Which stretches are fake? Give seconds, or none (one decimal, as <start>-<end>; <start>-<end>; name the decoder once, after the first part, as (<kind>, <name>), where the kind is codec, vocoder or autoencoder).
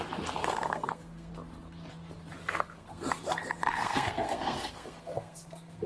0.4-1.3 (codec, SNAC); 2.4-5.9